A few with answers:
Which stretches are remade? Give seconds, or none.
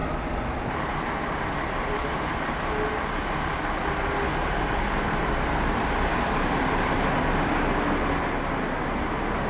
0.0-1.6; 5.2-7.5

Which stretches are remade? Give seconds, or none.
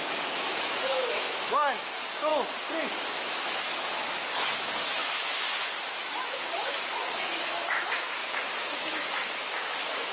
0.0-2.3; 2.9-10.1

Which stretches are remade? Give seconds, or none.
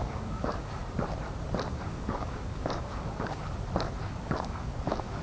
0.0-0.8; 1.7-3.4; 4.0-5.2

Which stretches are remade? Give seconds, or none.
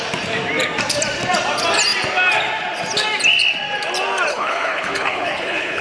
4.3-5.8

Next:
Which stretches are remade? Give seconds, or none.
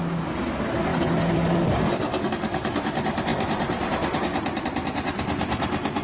none